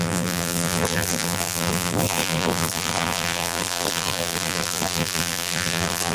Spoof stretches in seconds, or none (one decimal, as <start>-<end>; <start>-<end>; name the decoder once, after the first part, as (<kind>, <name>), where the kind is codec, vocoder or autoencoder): 0.0-6.1 (vocoder, BigVGAN v2)